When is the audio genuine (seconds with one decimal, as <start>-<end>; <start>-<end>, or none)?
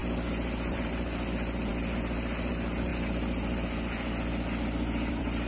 0.0-0.7; 2.9-5.1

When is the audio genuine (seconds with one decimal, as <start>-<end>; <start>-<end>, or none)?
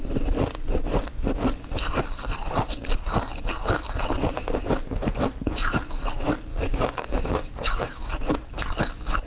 0.0-6.5; 8.1-9.3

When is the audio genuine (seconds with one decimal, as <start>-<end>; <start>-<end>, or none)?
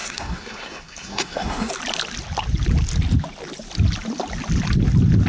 1.7-5.3